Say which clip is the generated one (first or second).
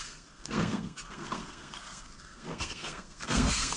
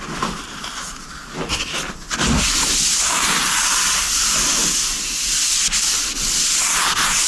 first